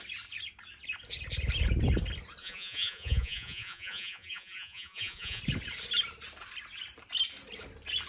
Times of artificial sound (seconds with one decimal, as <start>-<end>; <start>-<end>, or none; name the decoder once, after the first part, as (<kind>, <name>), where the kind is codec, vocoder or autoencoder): 2.4-5.4 (vocoder, Vocos)